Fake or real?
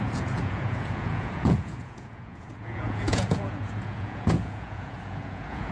fake